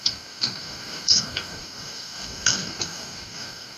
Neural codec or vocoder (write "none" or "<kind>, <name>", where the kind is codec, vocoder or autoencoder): codec, DAC